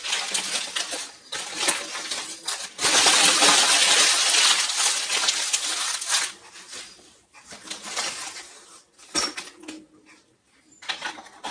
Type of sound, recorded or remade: recorded